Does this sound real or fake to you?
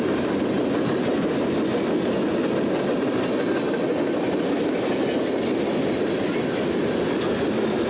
real